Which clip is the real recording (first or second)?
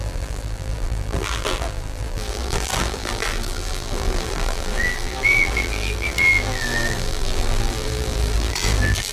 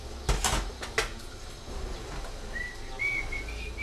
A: second